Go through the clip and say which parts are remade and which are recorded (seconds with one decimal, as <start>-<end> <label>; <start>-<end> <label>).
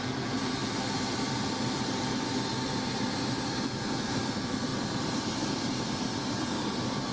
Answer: 0.0-7.1 recorded